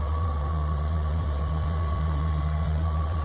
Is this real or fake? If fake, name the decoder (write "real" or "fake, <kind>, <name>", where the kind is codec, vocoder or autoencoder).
fake, vocoder, WaveNeXt